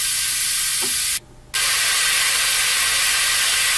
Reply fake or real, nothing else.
real